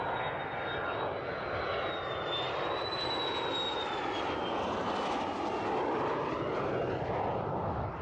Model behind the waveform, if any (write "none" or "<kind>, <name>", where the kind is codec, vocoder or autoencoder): none